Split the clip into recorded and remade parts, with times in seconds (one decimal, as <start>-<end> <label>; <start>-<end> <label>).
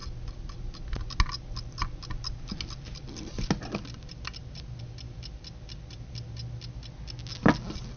0.0-8.0 recorded